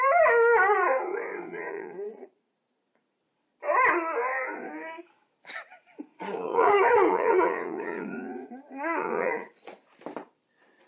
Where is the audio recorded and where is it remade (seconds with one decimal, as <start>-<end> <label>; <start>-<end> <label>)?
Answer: 0.0-1.7 recorded; 1.7-3.2 remade; 3.2-6.1 recorded; 6.1-9.9 remade; 9.9-10.9 recorded